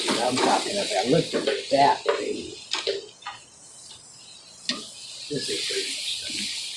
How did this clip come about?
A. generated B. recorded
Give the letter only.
B